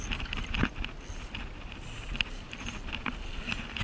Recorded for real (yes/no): yes